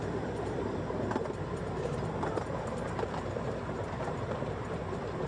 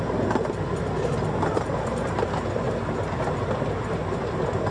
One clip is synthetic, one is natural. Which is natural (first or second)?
second